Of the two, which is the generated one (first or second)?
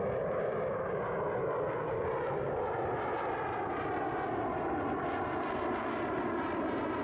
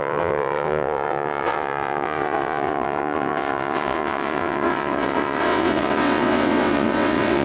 second